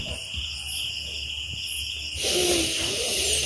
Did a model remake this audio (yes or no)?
no